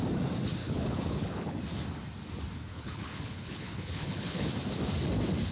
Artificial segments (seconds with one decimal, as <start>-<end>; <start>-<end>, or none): 0.6-1.6; 2.7-4.5